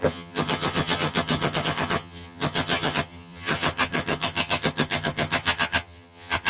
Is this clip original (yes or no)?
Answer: no